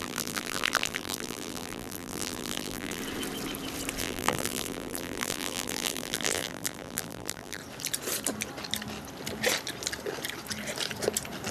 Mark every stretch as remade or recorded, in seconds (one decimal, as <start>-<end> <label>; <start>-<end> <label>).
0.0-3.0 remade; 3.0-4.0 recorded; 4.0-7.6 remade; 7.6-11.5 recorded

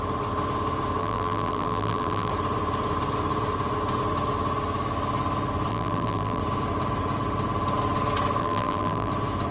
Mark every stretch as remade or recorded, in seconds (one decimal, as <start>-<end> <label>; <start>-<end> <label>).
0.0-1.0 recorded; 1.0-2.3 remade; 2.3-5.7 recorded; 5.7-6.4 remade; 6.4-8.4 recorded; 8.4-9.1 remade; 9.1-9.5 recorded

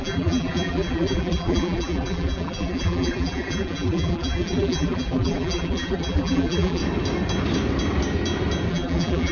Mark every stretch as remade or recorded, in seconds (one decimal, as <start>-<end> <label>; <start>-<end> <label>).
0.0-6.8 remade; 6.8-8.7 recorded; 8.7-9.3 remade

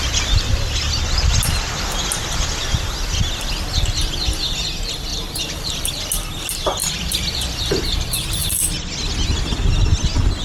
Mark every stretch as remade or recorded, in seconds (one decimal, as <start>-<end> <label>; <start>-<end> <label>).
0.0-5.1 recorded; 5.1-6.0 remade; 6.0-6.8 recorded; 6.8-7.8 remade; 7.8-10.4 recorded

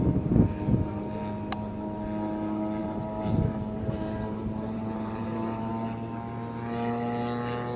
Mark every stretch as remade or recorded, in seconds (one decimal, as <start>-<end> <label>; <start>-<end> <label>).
0.0-2.8 recorded; 2.8-5.7 remade; 5.7-7.8 recorded

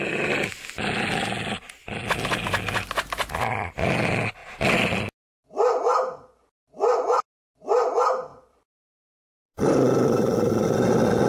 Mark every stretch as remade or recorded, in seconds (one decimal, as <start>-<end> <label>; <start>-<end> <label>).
0.0-8.3 recorded; 8.3-10.9 remade; 10.9-11.3 recorded

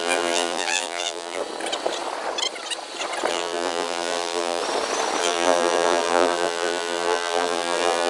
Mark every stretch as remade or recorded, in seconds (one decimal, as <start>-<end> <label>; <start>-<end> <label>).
0.0-1.4 remade; 1.4-3.3 recorded; 3.3-4.6 remade; 4.6-5.2 recorded; 5.2-8.1 remade